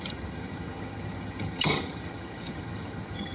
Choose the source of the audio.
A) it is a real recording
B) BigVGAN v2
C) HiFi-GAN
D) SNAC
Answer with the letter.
C